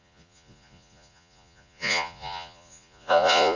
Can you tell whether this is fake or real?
fake